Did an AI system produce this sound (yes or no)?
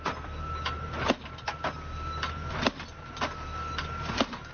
no